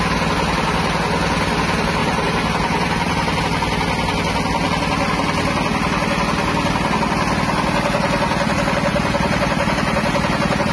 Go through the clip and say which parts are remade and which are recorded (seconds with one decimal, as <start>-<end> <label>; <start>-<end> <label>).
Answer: 0.0-2.0 recorded; 2.0-3.4 remade; 3.4-8.9 recorded; 8.9-10.7 remade